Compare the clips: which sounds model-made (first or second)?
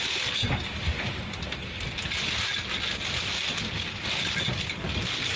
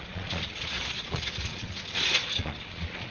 second